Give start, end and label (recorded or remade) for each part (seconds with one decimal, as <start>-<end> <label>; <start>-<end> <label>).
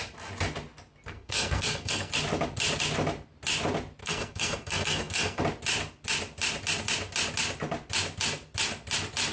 0.0-1.1 recorded; 1.1-2.1 remade; 2.1-4.0 recorded; 4.0-5.4 remade; 5.4-9.3 recorded